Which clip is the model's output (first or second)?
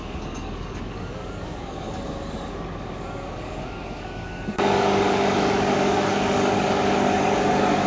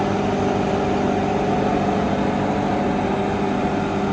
first